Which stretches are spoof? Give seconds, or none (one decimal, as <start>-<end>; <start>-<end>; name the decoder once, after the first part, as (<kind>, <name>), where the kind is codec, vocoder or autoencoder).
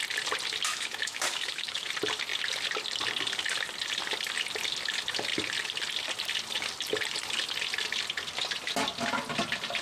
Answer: 0.7-1.9 (autoencoder, DAC-VAE)